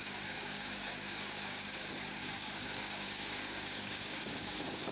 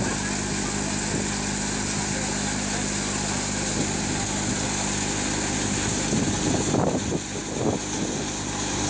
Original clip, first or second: second